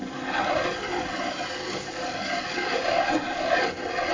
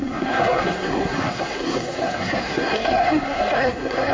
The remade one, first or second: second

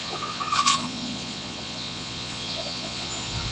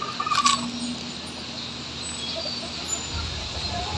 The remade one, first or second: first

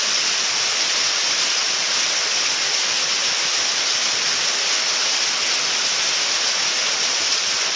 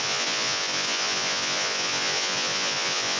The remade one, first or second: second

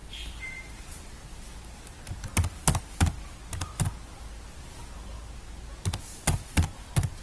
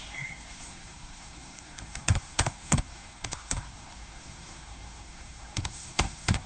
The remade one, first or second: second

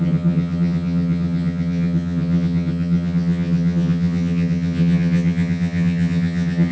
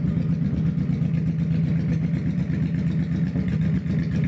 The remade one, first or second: first